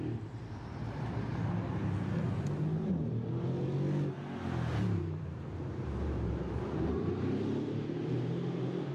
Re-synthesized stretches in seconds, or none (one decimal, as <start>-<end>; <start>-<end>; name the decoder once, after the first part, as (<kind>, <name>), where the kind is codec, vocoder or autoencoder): 0.0-1.3 (vocoder, BigVGAN v2); 4.7-8.9